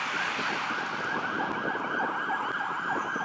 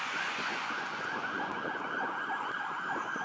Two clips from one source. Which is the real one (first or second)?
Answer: first